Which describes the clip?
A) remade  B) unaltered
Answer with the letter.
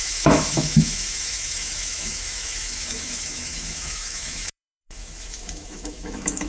A